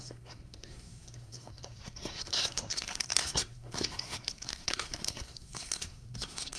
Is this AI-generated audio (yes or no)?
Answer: yes